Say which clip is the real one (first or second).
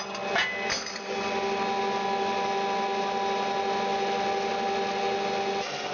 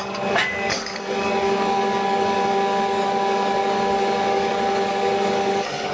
first